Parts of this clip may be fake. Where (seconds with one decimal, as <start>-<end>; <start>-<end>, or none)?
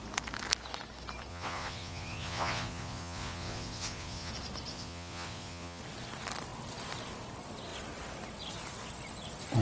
1.3-4.3; 4.7-5.8